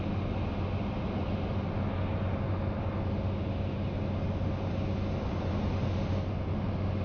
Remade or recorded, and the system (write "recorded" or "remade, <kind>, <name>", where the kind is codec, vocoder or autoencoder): recorded